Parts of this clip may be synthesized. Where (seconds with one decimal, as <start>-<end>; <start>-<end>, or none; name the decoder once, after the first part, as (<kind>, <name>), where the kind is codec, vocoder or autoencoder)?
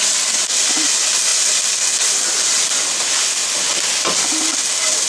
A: none